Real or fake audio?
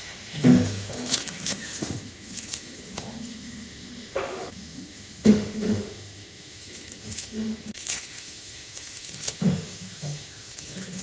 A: fake